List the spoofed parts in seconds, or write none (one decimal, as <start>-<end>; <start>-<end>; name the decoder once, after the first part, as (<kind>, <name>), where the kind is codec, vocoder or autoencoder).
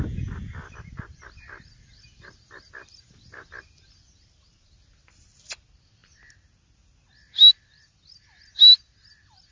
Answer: none